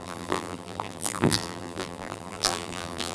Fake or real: fake